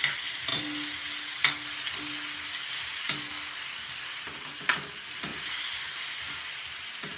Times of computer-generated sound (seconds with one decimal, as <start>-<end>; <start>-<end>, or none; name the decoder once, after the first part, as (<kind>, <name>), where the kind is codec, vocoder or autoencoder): 5.3-6.4 (vocoder, BigVGAN v2)